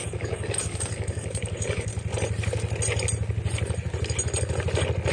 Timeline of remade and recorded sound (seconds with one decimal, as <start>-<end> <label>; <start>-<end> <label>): 0.0-1.9 remade; 1.9-5.1 recorded